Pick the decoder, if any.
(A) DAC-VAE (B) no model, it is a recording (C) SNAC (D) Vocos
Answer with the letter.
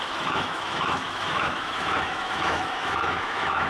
A